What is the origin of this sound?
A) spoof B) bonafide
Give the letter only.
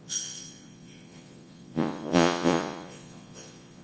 A